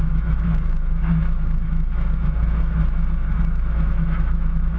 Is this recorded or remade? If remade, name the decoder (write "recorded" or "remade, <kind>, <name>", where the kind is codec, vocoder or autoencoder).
remade, autoencoder, DAC-VAE